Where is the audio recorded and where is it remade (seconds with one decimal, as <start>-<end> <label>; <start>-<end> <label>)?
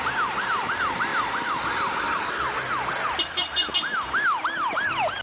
0.0-5.2 recorded